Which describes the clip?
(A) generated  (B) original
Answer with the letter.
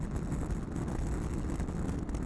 B